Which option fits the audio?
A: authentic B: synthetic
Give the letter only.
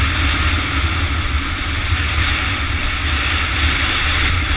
A